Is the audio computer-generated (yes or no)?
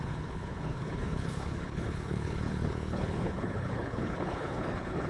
yes